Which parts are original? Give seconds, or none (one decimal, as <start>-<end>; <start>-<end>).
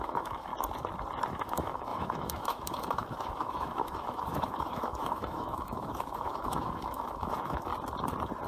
0.5-1.3; 7.7-8.5